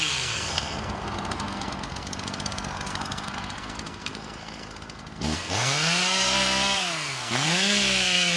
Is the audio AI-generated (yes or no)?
yes